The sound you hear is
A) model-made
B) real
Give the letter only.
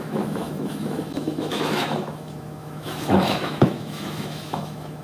A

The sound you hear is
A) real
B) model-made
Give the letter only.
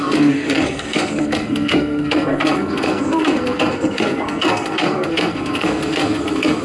B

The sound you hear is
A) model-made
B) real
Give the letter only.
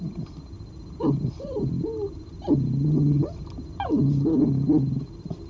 B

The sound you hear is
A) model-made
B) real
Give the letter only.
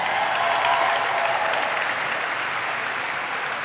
A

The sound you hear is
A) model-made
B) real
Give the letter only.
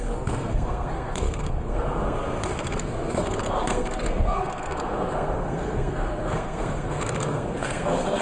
A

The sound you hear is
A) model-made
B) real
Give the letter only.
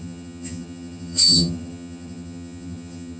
A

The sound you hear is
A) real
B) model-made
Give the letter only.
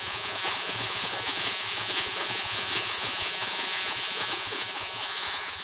B